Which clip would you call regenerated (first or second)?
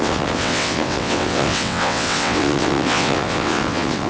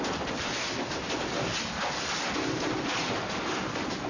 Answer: first